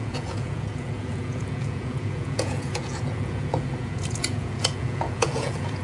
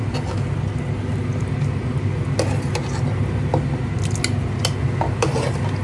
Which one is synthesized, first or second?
first